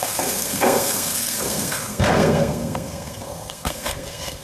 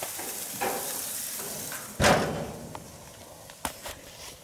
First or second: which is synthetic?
first